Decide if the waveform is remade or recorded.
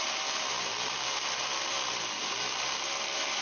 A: recorded